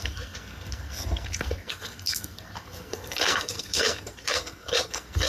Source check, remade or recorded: remade